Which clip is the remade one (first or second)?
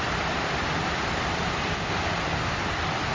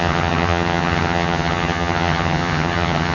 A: second